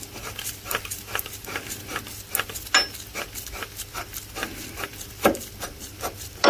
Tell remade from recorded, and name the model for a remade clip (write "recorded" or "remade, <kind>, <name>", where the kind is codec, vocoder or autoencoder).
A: recorded